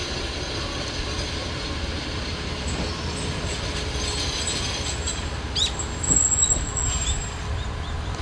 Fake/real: real